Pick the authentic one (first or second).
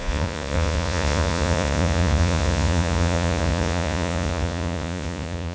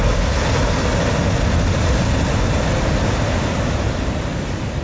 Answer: second